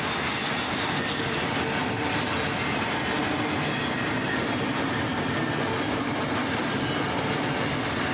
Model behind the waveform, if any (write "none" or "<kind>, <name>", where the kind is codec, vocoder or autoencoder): none